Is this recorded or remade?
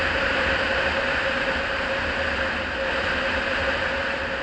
recorded